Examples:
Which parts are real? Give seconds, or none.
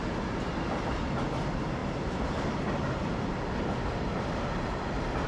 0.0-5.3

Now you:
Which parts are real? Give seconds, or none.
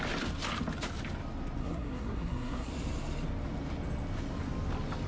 0.0-1.6; 2.7-5.1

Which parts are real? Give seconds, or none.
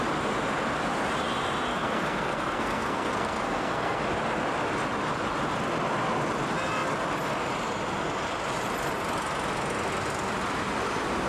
0.0-1.7; 4.0-11.3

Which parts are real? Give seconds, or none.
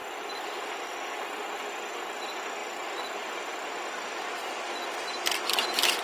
0.0-6.0